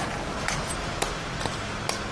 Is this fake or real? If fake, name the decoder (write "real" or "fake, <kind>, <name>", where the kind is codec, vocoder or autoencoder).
real